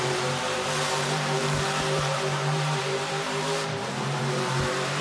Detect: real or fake fake